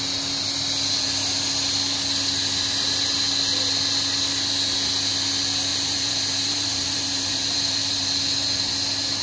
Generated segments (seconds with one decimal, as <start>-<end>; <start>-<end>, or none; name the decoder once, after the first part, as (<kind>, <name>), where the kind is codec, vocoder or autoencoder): 5.7-8.2 (vocoder, BigVGAN v2)